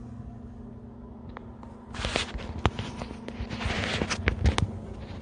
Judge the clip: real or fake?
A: real